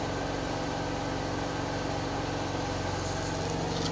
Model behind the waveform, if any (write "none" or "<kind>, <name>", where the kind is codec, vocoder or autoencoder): none